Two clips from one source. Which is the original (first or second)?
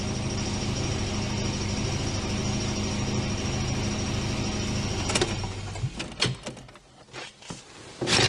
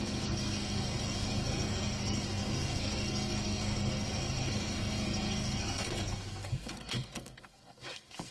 first